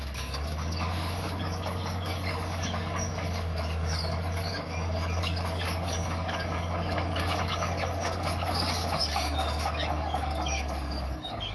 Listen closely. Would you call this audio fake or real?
fake